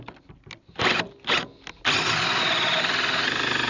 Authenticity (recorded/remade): recorded